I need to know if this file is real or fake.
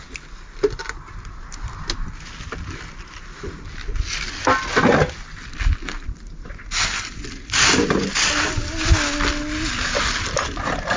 real